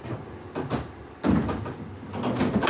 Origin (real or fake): real